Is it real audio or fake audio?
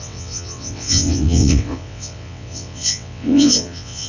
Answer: fake